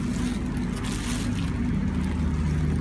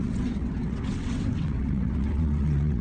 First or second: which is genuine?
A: first